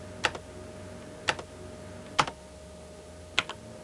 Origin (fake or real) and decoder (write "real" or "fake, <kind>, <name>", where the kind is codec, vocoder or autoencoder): real